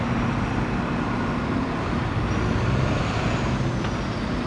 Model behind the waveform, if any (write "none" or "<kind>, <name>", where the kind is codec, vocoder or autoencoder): none